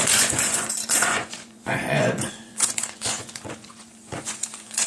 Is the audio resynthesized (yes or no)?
yes